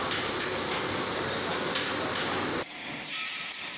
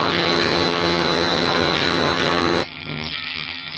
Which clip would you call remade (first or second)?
second